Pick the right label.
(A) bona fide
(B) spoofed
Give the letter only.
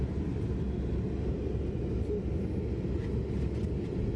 A